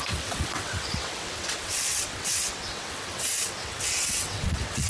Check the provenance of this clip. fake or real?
fake